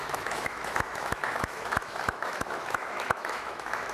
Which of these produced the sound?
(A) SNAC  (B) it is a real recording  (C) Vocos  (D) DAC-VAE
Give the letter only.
D